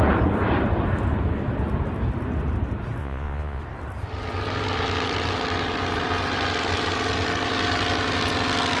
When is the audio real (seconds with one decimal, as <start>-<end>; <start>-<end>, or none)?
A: 0.0-3.0; 3.6-8.8